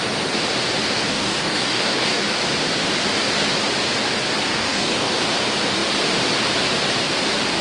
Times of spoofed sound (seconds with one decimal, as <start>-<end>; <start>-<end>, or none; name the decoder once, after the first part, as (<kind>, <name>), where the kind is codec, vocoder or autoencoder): 1.1-2.4 (codec, DAC); 4.5-5.1